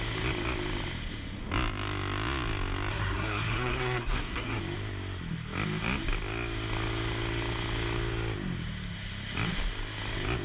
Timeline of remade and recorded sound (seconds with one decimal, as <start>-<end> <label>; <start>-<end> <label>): 0.0-2.9 recorded; 2.9-4.6 remade; 4.6-10.4 recorded